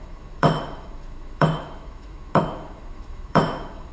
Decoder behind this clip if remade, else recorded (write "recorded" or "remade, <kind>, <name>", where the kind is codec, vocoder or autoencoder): remade, autoencoder, DAC-VAE